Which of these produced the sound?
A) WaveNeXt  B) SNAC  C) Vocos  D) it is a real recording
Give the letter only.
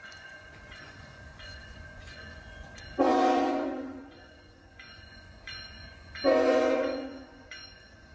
C